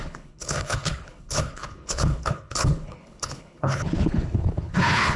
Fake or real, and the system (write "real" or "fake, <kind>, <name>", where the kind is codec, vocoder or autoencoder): fake, codec, HILCodec